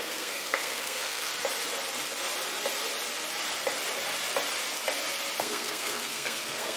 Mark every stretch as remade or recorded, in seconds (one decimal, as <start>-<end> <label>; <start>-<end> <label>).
0.0-1.3 remade; 1.3-5.4 recorded; 5.4-6.8 remade

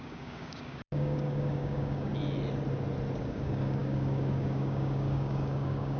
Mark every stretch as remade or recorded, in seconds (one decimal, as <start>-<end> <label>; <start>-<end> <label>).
0.0-2.1 remade; 2.1-3.2 recorded; 3.2-6.0 remade

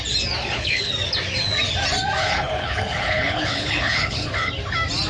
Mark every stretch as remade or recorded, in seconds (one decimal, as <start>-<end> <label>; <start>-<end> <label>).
0.0-0.4 recorded; 0.4-0.9 remade; 0.9-2.2 recorded; 2.2-4.5 remade; 4.5-5.1 recorded

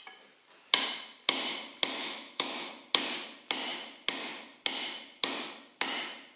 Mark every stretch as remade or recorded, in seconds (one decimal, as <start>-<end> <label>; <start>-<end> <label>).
0.0-2.0 recorded; 2.0-2.7 remade; 2.7-6.4 recorded

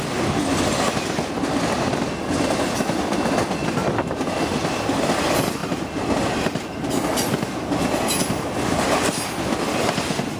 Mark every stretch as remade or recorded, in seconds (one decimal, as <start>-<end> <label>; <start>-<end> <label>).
0.0-10.4 recorded

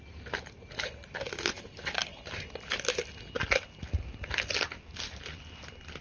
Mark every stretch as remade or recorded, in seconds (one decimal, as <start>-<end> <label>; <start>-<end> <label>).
0.0-6.0 recorded